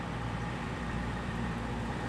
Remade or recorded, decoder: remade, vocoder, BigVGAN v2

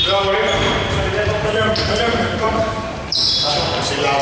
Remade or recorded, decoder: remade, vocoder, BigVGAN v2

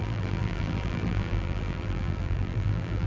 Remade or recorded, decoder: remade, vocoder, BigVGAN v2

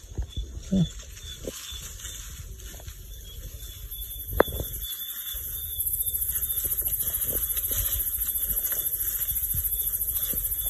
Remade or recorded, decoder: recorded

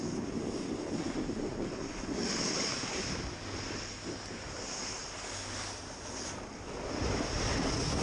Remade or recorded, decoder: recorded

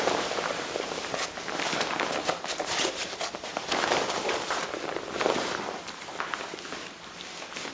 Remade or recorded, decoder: remade, vocoder, BigVGAN v2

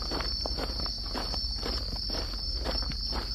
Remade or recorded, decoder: recorded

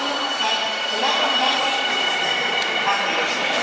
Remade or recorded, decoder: remade, vocoder, BigVGAN v2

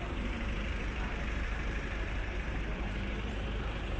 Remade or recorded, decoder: remade, vocoder, BigVGAN v2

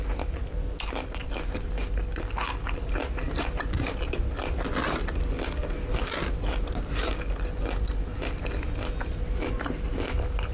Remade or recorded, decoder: recorded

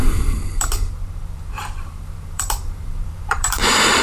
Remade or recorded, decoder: remade, vocoder, BigVGAN v2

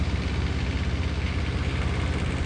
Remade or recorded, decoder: recorded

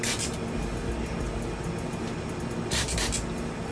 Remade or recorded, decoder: recorded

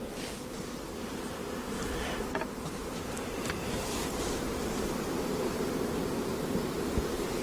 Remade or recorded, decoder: remade, vocoder, BigVGAN v2